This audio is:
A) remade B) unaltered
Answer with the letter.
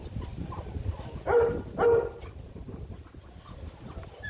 B